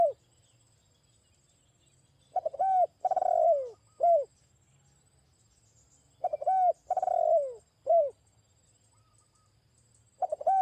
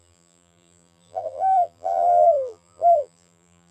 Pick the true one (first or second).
first